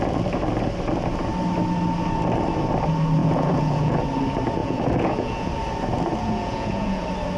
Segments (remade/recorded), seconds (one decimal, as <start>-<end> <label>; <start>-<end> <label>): 0.0-3.2 recorded; 3.2-4.0 remade; 4.0-4.6 recorded; 4.6-5.5 remade; 5.5-6.2 recorded; 6.2-7.0 remade; 7.0-7.4 recorded